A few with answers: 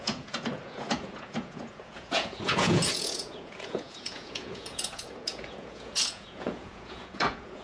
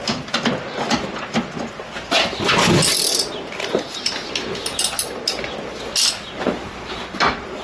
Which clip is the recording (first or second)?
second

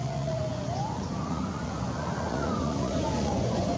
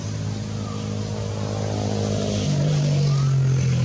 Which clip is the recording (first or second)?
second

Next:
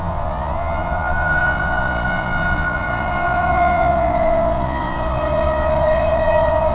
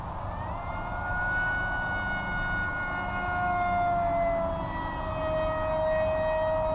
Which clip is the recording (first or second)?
second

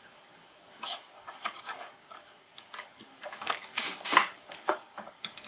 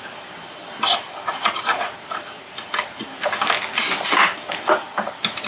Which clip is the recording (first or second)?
second